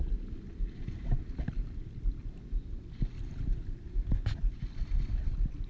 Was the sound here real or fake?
real